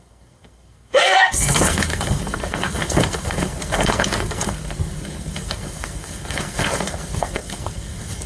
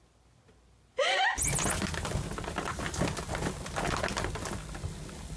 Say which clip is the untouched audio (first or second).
second